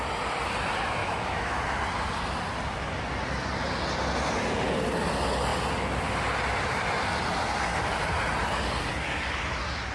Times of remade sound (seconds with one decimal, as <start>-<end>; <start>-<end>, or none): 1.0-1.6